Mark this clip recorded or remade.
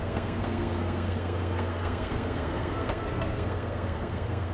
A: remade